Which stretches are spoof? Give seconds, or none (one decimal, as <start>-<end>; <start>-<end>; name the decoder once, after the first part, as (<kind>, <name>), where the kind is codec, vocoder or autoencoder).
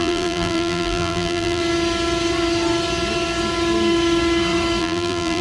0.0-1.6 (vocoder, BigVGAN v2); 4.8-5.4